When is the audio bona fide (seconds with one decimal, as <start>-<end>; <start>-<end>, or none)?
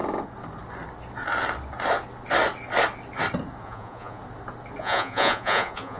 0.0-3.6; 4.2-4.8